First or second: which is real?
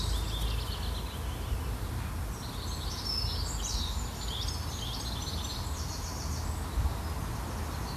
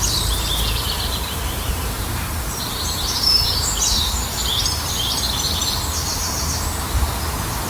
first